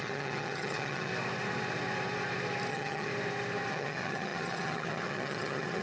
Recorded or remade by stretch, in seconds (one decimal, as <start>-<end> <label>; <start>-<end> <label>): 0.0-1.1 remade; 1.1-2.7 recorded; 2.7-3.1 remade; 3.1-3.7 recorded; 3.7-5.8 remade